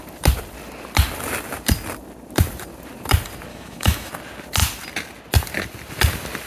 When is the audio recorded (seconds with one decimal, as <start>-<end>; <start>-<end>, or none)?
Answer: 0.0-3.5; 4.1-6.5

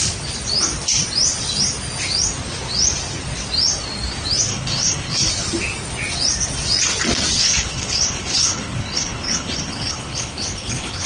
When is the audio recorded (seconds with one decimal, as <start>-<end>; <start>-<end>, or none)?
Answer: 0.0-4.5; 5.3-7.4